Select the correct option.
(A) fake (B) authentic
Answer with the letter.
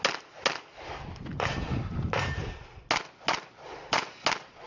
B